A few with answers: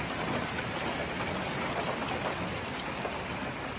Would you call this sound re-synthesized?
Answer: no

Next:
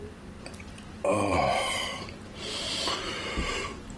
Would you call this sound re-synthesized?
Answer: yes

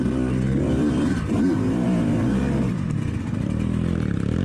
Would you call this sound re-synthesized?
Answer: yes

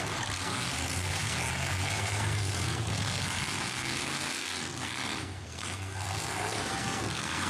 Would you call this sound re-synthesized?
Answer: yes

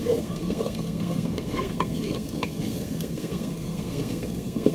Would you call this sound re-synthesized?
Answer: yes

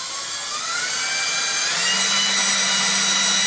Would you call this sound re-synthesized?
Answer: no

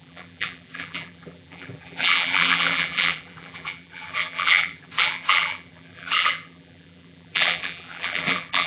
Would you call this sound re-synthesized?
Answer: yes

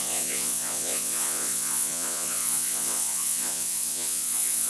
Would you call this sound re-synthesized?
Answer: yes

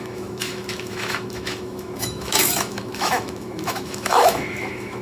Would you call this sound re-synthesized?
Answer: yes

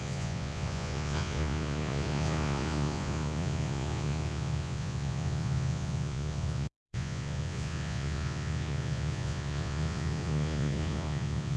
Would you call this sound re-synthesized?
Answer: yes